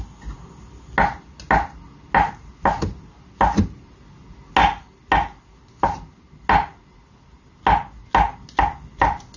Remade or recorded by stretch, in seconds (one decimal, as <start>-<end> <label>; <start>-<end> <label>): 0.0-9.4 recorded